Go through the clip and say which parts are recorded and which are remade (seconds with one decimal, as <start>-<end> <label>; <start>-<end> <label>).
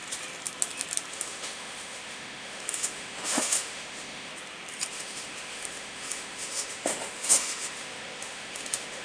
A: 0.0-1.1 recorded; 1.1-4.3 remade; 4.3-4.9 recorded; 4.9-9.0 remade